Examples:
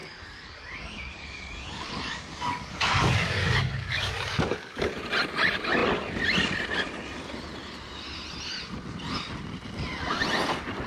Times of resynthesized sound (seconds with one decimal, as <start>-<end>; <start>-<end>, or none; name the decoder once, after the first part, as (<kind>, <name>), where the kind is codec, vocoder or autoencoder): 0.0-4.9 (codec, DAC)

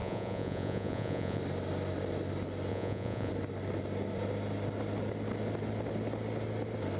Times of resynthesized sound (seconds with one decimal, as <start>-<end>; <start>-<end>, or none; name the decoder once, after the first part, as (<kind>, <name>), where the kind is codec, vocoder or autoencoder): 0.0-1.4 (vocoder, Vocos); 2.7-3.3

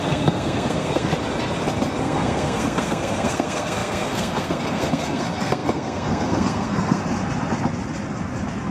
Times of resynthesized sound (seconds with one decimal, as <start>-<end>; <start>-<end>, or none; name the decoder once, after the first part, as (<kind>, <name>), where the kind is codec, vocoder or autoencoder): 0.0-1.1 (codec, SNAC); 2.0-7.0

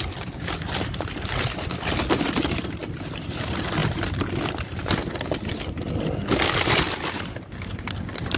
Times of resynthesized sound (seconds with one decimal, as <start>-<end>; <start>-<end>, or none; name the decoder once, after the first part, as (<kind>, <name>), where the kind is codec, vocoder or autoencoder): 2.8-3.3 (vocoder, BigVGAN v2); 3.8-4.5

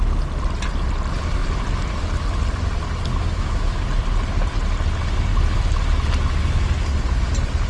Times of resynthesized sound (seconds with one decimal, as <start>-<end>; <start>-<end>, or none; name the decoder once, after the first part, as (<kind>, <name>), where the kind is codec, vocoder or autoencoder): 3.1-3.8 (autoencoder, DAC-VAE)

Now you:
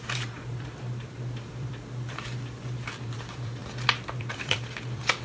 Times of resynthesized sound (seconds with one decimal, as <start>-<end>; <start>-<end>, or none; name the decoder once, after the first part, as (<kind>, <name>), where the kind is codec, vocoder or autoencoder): 0.0-3.6 (vocoder, BigVGAN v2); 4.2-5.2